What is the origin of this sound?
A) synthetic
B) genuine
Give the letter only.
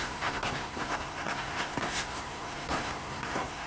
A